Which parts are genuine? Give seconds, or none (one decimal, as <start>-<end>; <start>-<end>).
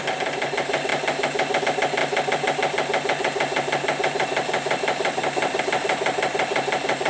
0.0-7.1